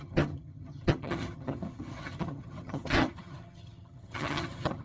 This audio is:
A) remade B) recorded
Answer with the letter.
A